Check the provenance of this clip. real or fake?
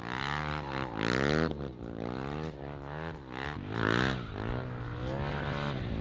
real